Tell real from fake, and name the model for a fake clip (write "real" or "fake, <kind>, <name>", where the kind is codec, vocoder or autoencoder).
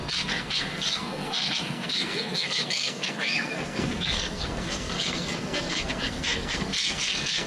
fake, codec, SNAC